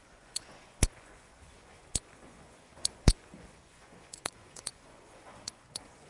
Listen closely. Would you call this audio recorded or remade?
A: remade